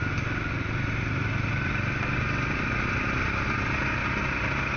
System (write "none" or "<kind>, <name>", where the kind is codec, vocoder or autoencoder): none